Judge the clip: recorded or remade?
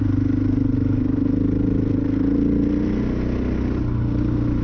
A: recorded